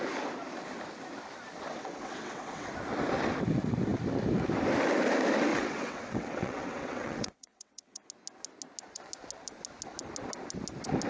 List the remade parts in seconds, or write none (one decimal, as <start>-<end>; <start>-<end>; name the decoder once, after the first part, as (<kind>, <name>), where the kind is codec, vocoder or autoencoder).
1.7-2.7 (vocoder, WaveNeXt); 5.5-8.1